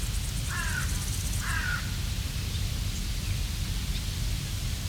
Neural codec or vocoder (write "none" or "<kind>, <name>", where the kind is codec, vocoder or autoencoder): none